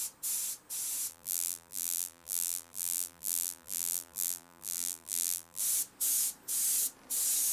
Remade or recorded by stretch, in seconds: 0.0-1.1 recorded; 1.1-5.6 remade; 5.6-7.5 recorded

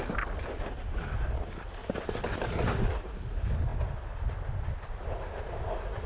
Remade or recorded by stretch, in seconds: 0.0-1.8 recorded; 1.8-2.4 remade; 2.4-6.1 recorded

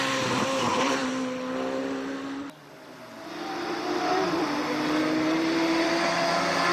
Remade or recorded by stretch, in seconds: 0.0-1.0 remade; 1.0-5.0 recorded; 5.0-6.7 remade

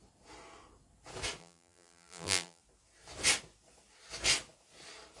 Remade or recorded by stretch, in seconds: 0.0-1.4 recorded; 1.4-2.6 remade; 2.6-5.2 recorded

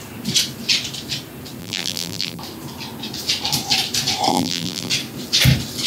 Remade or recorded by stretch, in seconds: 0.0-1.6 recorded; 1.6-2.4 remade; 2.4-4.3 recorded; 4.3-4.9 remade; 4.9-5.9 recorded

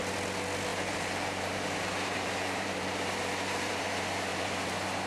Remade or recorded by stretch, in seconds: 0.0-0.7 recorded; 0.7-3.8 remade; 3.8-4.3 recorded; 4.3-5.1 remade

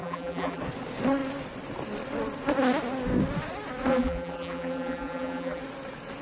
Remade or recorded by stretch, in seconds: 0.0-0.6 remade; 0.6-3.9 recorded; 3.9-5.6 remade; 5.6-6.2 recorded

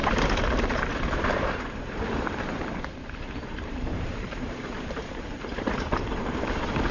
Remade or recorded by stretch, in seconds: 0.0-3.2 recorded; 3.2-6.9 remade